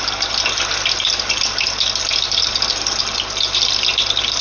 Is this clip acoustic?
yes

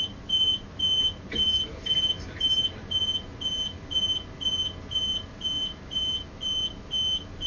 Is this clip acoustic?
yes